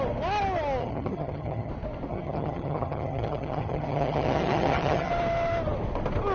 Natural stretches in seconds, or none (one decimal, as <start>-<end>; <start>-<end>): 0.0-0.8; 1.7-2.1; 5.1-6.3